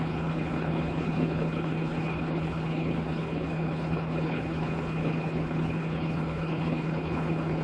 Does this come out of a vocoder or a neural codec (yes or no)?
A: yes